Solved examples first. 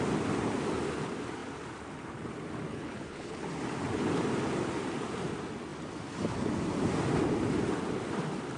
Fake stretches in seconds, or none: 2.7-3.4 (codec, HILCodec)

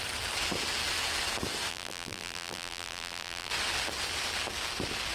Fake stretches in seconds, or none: 1.7-3.5 (vocoder, BigVGAN v2)

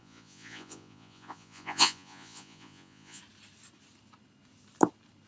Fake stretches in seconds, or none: 0.0-3.2 (vocoder, Vocos)